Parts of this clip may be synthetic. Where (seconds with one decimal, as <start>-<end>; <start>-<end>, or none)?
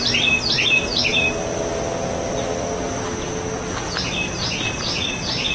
none